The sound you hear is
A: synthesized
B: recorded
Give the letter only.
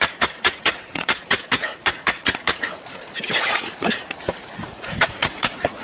A